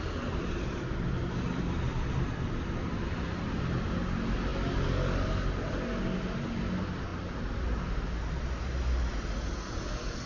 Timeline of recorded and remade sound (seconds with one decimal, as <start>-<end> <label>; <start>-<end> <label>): 0.0-7.1 recorded; 7.1-8.5 remade; 8.5-10.3 recorded